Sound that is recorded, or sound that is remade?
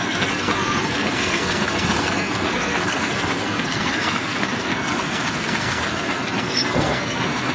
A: remade